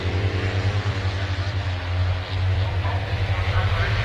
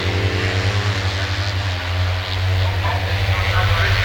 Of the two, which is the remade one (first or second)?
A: first